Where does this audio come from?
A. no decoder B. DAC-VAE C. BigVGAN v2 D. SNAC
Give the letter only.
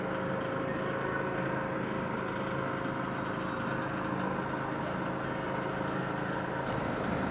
A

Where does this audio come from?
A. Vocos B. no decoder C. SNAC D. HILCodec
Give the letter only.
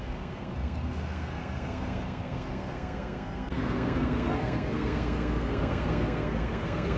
C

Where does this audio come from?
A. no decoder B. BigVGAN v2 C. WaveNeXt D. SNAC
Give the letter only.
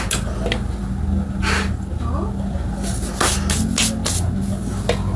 A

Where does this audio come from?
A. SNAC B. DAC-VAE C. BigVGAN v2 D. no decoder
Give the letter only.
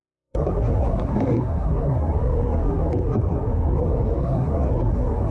A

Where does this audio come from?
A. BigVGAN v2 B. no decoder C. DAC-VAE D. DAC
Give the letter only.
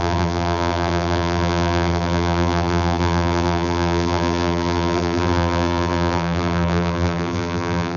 A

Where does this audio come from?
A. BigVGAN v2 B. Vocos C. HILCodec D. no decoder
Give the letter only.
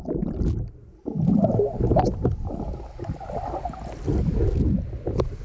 D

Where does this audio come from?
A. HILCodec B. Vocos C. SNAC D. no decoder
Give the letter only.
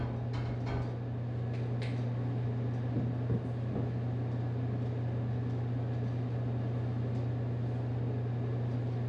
D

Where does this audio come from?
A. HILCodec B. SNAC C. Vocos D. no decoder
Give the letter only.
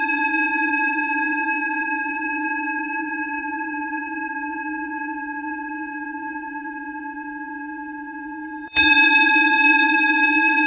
C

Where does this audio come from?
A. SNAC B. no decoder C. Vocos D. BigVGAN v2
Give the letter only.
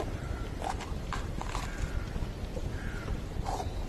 B